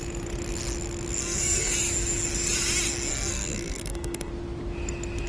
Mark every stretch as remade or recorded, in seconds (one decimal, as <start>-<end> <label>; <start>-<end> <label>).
0.0-1.2 recorded; 1.2-1.7 remade; 1.7-3.1 recorded; 3.1-4.3 remade; 4.3-5.3 recorded